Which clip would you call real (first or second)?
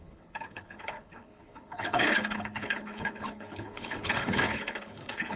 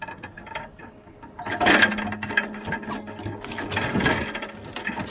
second